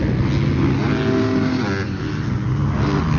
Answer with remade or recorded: recorded